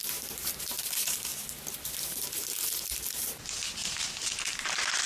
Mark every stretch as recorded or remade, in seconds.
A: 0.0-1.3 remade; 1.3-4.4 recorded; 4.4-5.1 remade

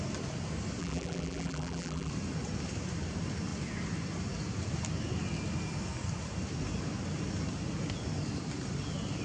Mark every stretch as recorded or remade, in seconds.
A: 0.0-0.8 recorded; 0.8-2.1 remade; 2.1-9.2 recorded